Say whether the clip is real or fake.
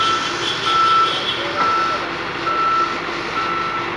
real